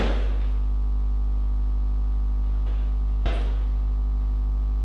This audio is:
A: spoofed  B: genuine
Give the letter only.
B